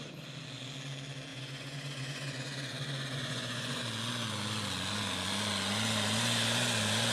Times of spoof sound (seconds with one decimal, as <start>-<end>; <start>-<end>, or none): 1.3-3.8